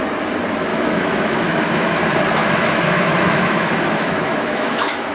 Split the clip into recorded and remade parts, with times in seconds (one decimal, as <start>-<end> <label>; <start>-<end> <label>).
0.0-0.7 recorded; 0.7-1.9 remade; 1.9-2.4 recorded; 2.4-5.1 remade